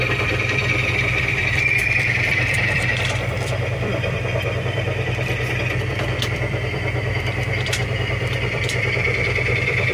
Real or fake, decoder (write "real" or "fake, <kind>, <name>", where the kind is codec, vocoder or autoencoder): fake, vocoder, BigVGAN v2